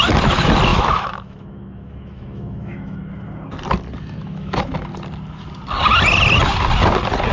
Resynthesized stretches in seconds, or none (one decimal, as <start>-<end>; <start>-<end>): 0.7-3.1; 4.2-4.9